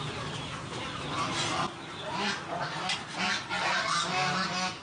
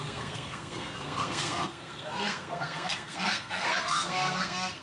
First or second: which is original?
first